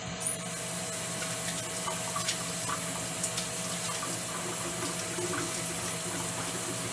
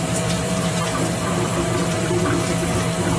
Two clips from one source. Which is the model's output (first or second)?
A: second